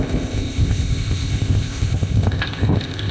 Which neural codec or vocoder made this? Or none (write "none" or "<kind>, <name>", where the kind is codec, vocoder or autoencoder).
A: codec, ZipCodec